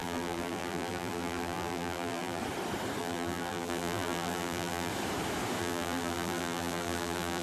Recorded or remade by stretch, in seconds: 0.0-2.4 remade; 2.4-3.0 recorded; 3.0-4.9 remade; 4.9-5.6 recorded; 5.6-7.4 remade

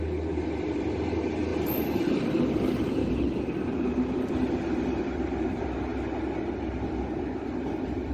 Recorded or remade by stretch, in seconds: 0.0-1.5 remade; 1.5-2.2 recorded; 2.2-5.9 remade; 5.9-6.6 recorded; 6.6-8.1 remade

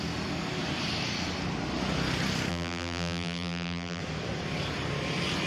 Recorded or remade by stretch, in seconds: 0.0-2.5 recorded; 2.5-4.0 remade; 4.0-5.5 recorded

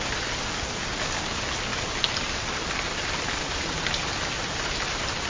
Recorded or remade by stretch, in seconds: 0.0-1.7 recorded; 1.7-5.3 remade

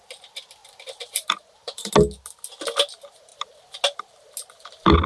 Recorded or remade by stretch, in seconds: 0.0-0.6 recorded; 0.6-1.9 remade; 1.9-5.1 recorded

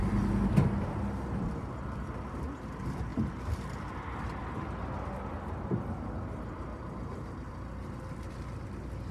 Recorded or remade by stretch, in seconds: 0.0-9.1 recorded

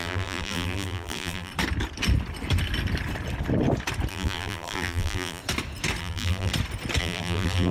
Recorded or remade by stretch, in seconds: 0.0-1.5 remade; 1.5-4.1 recorded; 4.1-5.4 remade; 5.4-6.0 recorded; 6.0-6.5 remade; 6.5-7.0 recorded; 7.0-7.7 remade